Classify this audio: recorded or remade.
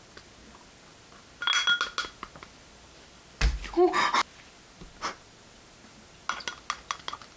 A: recorded